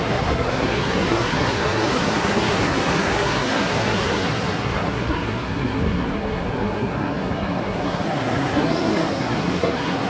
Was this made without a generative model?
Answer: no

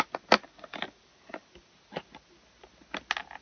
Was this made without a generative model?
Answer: yes